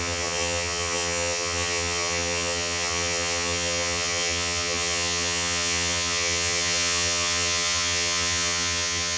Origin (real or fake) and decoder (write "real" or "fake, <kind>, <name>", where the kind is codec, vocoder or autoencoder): fake, vocoder, HiFi-GAN